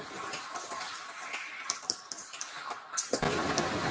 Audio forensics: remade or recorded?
recorded